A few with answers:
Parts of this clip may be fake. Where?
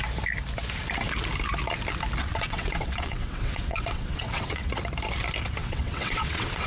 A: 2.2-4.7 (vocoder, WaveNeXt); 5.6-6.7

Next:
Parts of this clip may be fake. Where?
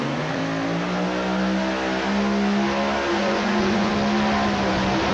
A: 0.0-0.4 (vocoder, Vocos); 3.1-3.9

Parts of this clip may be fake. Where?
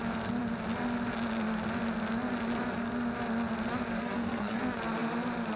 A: 4.0-4.6 (codec, SNAC)